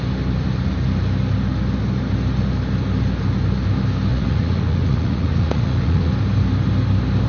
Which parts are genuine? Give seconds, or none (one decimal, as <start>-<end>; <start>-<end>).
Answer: 0.0-4.1; 6.1-7.3